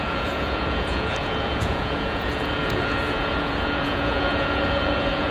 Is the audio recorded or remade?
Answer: remade